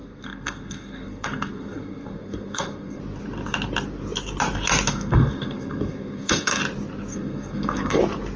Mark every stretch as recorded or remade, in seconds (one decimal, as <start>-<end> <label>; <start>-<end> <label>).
0.0-3.0 remade; 3.0-4.9 recorded; 4.9-6.6 remade; 6.6-7.1 recorded; 7.1-8.0 remade; 8.0-8.4 recorded